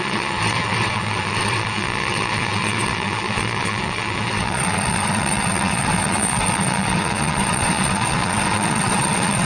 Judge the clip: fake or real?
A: fake